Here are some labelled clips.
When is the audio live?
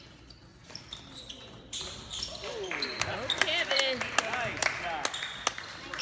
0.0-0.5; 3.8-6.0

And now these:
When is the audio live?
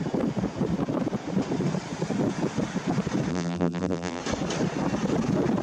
0.0-3.3; 4.2-5.6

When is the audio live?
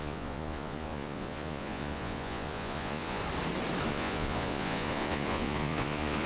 3.2-3.9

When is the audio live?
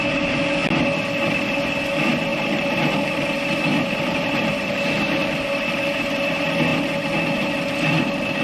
0.0-2.3; 5.3-8.4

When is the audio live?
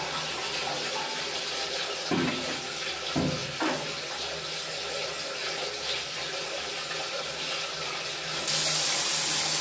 0.0-9.6